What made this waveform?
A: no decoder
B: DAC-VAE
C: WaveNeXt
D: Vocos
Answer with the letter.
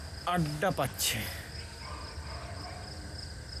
A